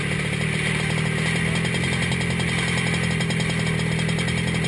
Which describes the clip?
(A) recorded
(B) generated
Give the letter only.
A